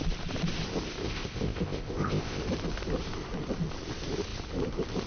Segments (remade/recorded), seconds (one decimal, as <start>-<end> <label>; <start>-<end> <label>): 0.0-1.0 recorded; 1.0-2.4 remade; 2.4-5.1 recorded